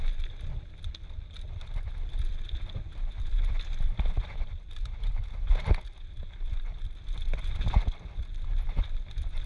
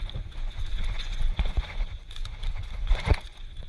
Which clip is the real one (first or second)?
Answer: first